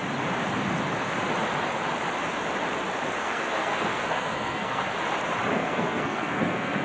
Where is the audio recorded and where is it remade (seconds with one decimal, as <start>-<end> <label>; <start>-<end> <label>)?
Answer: 0.0-3.2 recorded; 3.2-4.8 remade; 4.8-5.5 recorded; 5.5-6.8 remade